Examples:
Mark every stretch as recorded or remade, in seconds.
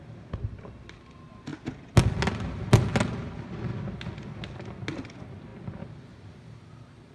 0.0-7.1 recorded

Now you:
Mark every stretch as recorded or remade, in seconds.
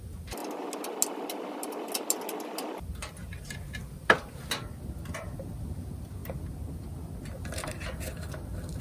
0.0-8.8 recorded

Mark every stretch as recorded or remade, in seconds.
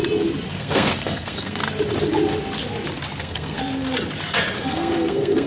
0.0-0.5 recorded; 0.5-1.6 remade; 1.6-3.2 recorded; 3.2-3.6 remade; 3.6-4.6 recorded; 4.6-5.5 remade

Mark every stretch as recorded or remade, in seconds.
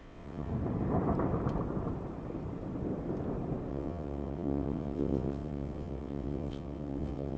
0.0-0.5 remade; 0.5-3.7 recorded; 3.7-7.4 remade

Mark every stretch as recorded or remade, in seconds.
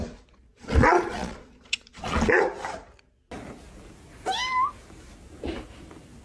0.0-0.5 recorded; 0.5-2.4 remade; 2.4-6.2 recorded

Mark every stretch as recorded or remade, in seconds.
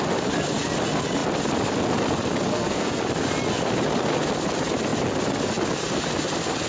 0.0-2.5 recorded; 2.5-3.0 remade; 3.0-6.7 recorded